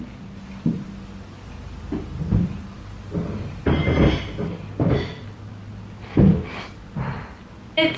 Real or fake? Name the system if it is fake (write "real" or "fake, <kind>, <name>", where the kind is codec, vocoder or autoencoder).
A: real